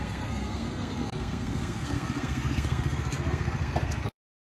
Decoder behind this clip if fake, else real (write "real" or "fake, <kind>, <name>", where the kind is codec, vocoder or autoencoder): fake, codec, SNAC